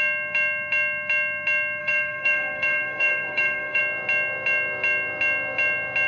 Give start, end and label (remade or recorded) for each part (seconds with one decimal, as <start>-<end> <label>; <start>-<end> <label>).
0.0-1.8 recorded; 1.8-3.8 remade; 3.8-6.1 recorded